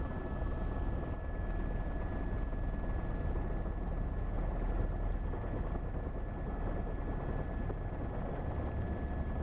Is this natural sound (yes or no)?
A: yes